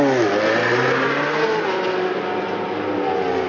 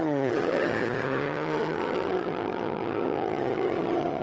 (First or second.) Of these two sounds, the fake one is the second